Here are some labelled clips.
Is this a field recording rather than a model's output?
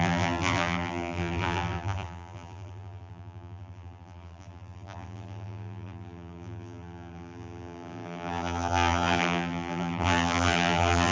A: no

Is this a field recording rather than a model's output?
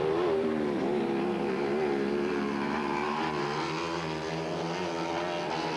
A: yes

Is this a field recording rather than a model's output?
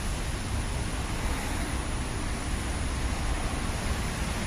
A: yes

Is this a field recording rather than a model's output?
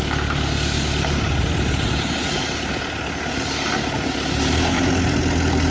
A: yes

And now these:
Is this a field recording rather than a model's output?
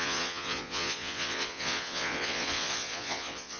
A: no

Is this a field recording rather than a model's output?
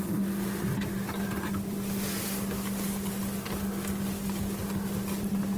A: yes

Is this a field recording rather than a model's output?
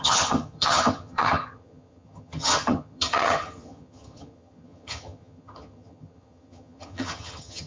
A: no